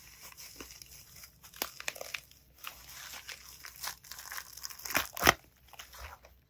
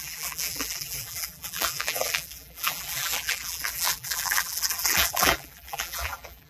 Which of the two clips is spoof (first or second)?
second